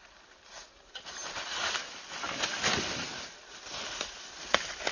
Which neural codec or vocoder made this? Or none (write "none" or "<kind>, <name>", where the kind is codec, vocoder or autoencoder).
none